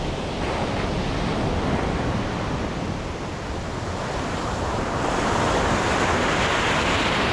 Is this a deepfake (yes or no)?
no